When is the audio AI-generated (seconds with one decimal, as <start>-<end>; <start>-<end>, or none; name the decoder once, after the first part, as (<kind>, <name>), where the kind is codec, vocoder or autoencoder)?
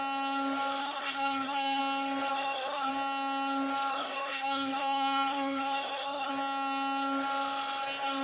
0.8-1.8 (codec, SNAC); 2.3-2.9; 3.9-6.3